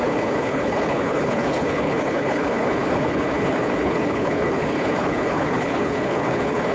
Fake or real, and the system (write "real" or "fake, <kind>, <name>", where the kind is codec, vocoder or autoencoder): fake, codec, HILCodec